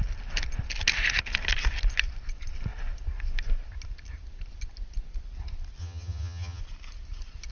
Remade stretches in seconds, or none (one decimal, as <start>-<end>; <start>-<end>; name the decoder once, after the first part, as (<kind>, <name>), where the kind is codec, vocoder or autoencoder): 5.8-6.6 (vocoder, HiFi-GAN)